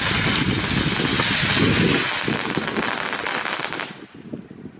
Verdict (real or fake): real